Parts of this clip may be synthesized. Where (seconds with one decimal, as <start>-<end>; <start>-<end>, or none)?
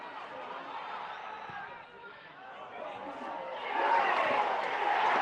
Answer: 2.0-2.5